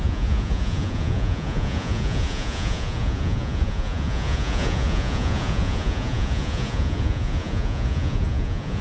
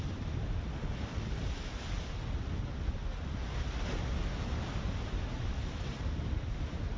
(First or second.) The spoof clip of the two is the first